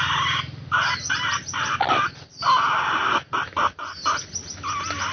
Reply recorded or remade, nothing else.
recorded